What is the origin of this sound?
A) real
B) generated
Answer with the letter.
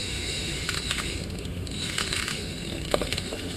B